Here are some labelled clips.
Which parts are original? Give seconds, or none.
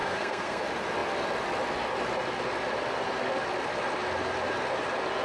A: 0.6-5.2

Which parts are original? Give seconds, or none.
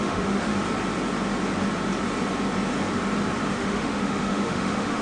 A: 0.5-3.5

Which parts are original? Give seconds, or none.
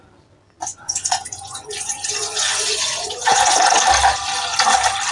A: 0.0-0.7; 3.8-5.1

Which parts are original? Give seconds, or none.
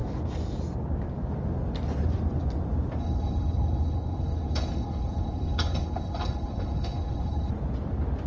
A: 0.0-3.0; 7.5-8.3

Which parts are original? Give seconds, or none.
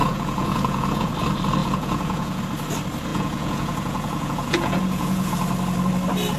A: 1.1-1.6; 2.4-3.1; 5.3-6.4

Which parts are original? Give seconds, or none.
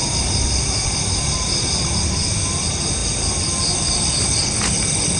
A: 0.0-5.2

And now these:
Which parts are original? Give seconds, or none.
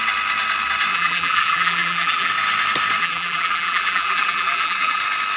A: 0.0-0.9; 2.3-3.0; 5.0-5.4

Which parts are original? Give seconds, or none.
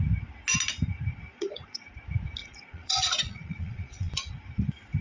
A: 0.0-1.3; 1.8-2.4; 4.1-5.0